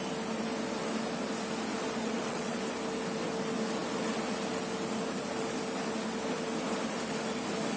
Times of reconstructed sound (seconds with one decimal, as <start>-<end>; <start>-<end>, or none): 2.0-2.6